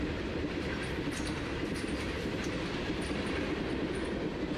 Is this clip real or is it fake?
fake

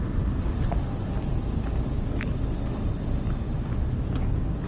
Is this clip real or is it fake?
real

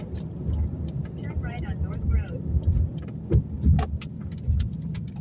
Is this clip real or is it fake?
real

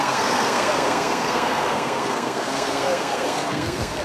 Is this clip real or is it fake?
fake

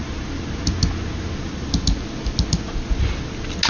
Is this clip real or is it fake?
real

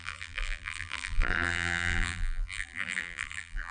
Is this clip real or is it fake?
fake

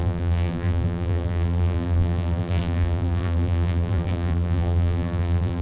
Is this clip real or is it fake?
fake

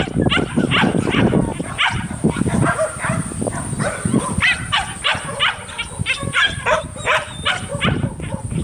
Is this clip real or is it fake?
real